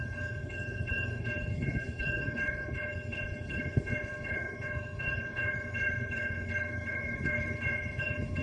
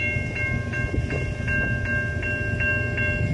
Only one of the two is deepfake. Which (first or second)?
first